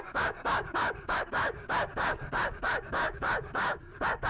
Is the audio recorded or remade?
remade